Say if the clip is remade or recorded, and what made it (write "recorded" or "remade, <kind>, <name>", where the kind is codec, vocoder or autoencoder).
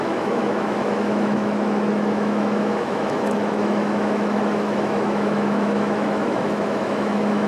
remade, autoencoder, DAC-VAE